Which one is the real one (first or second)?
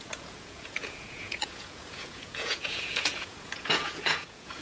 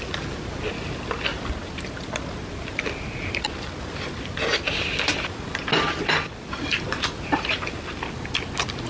second